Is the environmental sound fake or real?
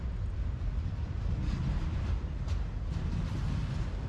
real